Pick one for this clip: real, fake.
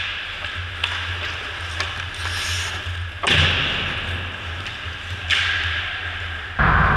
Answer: real